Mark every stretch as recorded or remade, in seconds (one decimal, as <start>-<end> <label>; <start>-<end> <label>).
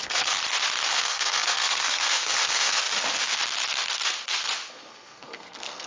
0.0-0.4 remade; 0.4-0.9 recorded; 0.9-2.8 remade; 2.8-4.7 recorded; 4.7-5.9 remade